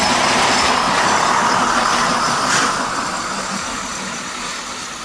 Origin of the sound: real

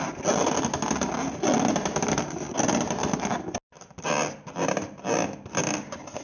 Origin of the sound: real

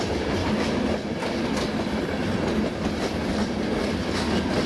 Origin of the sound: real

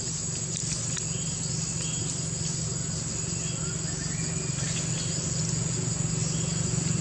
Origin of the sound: real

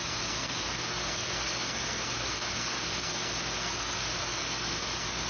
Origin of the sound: fake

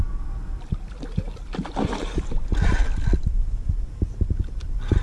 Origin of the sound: real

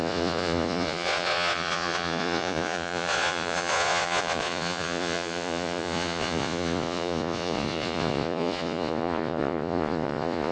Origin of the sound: fake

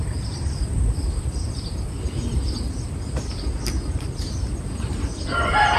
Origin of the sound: real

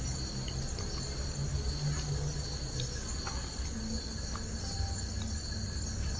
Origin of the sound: real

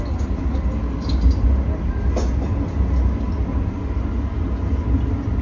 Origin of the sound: real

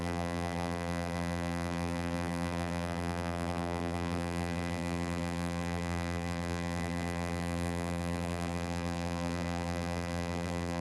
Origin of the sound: fake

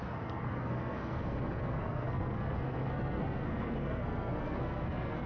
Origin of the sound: fake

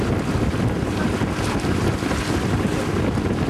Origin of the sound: real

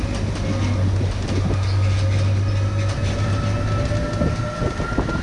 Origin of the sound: real